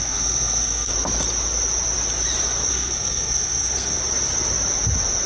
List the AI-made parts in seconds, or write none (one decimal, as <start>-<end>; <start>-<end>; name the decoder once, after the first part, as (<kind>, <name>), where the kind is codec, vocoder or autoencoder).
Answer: 0.0-0.9 (codec, SNAC); 2.7-4.0